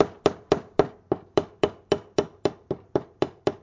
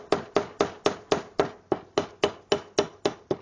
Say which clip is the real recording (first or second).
second